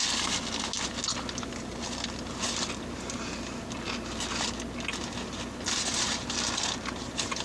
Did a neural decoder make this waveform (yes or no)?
no